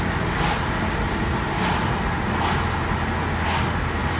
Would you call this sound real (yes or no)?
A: yes